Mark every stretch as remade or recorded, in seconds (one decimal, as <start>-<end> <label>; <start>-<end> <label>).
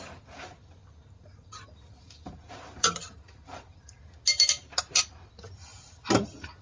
0.0-0.8 recorded; 0.8-4.0 remade; 4.0-6.6 recorded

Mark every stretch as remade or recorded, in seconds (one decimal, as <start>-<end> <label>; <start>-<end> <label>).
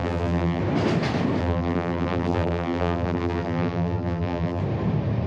0.0-0.6 remade; 0.6-1.4 recorded; 1.4-4.6 remade; 4.6-5.3 recorded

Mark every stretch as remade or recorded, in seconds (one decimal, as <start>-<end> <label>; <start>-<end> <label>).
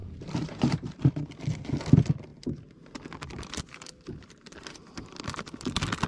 0.0-0.9 remade; 0.9-6.1 recorded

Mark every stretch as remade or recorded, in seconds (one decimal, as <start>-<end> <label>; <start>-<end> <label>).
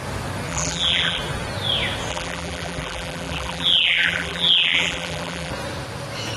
0.0-0.5 recorded; 0.5-1.2 remade; 1.2-2.1 recorded; 2.1-5.5 remade; 5.5-6.4 recorded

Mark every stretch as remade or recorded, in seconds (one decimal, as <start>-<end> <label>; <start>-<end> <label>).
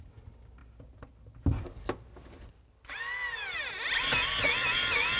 0.0-5.2 recorded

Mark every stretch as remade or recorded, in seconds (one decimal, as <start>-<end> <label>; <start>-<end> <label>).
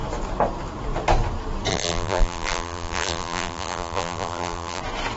0.0-1.7 recorded; 1.7-4.8 remade; 4.8-5.2 recorded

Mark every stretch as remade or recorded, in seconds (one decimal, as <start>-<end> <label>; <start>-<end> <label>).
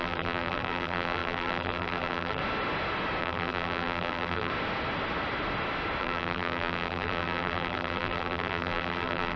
0.0-2.4 remade; 2.4-3.2 recorded; 3.2-4.5 remade; 4.5-6.0 recorded; 6.0-9.4 remade